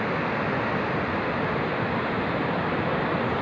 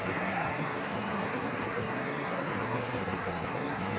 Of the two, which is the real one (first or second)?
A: first